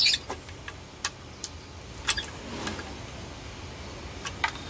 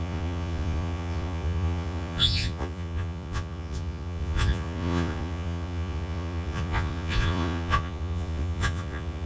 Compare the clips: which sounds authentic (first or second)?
first